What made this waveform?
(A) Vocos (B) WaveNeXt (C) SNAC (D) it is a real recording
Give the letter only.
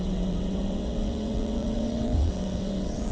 B